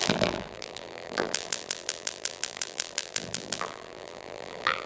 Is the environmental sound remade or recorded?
remade